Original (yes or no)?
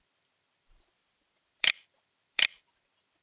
no